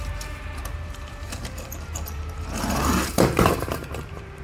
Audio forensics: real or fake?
fake